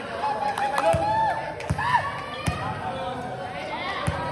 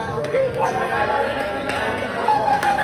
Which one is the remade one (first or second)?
second